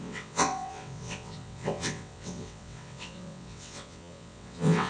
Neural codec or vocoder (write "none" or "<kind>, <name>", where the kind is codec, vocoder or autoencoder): vocoder, WaveNeXt